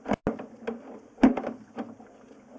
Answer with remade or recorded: recorded